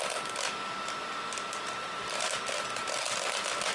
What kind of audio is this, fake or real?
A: real